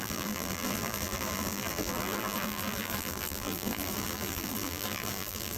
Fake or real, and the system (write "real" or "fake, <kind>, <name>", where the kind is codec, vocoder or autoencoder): fake, vocoder, BigVGAN v2